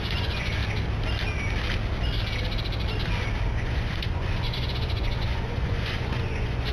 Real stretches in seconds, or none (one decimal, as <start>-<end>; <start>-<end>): 0.6-3.5